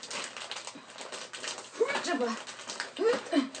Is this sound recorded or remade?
recorded